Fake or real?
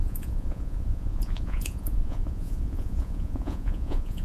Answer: fake